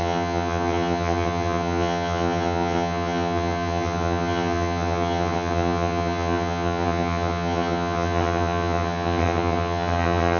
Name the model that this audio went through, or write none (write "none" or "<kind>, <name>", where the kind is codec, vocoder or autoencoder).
vocoder, HiFi-GAN